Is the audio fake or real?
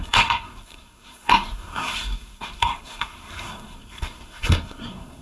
fake